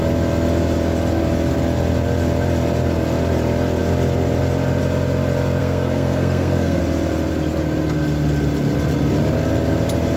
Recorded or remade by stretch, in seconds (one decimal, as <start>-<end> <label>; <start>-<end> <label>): 0.0-5.6 recorded; 5.6-6.8 remade; 6.8-10.2 recorded